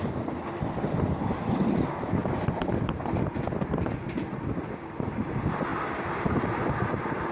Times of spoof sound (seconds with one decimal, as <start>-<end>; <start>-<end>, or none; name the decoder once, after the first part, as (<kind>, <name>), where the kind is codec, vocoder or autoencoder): none